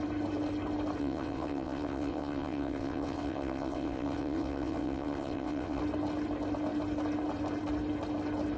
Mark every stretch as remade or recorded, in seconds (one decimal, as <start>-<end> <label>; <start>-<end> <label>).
0.0-1.0 recorded; 1.0-5.8 remade; 5.8-8.6 recorded

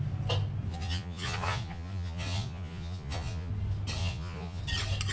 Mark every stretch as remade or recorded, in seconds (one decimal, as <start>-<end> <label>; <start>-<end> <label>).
0.0-0.7 recorded; 0.7-3.5 remade; 3.5-4.0 recorded; 4.0-4.6 remade; 4.6-5.1 recorded

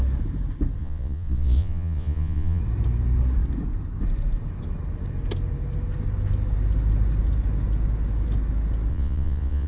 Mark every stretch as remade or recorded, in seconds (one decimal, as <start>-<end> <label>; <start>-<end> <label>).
0.0-0.8 recorded; 0.8-2.6 remade; 2.6-8.9 recorded; 8.9-9.7 remade

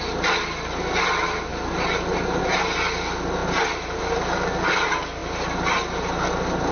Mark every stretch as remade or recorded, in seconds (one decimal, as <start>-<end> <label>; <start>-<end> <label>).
0.0-6.7 recorded

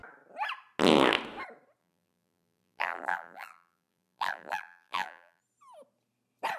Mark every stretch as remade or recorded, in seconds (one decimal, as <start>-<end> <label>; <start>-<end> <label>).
0.0-1.8 recorded; 1.8-5.4 remade; 5.4-6.6 recorded